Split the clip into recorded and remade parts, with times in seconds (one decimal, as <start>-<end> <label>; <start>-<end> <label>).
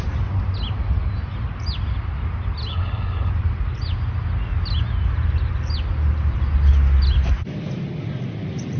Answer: 0.0-2.7 recorded; 2.7-3.3 remade; 3.3-8.8 recorded